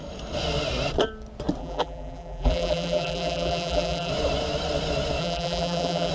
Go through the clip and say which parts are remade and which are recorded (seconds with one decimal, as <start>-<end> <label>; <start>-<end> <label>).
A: 0.0-1.6 recorded; 1.6-4.1 remade; 4.1-5.2 recorded; 5.2-6.1 remade